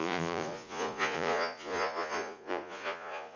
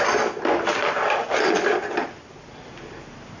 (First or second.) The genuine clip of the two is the second